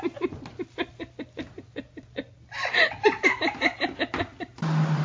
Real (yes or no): yes